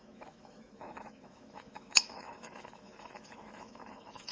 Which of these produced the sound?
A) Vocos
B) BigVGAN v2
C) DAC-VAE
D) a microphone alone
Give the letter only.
C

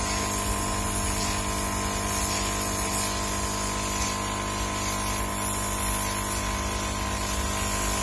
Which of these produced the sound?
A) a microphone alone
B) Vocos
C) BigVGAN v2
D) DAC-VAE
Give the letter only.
A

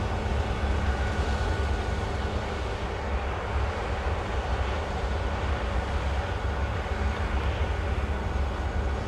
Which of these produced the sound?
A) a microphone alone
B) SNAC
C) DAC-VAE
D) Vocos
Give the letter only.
A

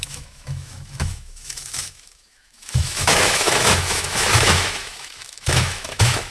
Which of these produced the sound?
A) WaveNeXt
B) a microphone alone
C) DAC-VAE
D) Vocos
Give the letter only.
C